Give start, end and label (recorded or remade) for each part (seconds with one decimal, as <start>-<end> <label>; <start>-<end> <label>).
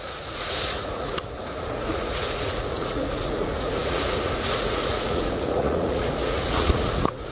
0.0-7.3 remade